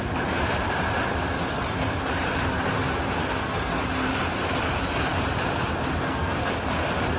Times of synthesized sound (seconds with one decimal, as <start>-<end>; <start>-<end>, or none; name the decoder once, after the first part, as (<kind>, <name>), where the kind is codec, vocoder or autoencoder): 3.2-3.8 (codec, SNAC); 6.0-6.5